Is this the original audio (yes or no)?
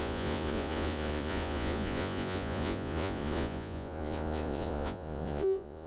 no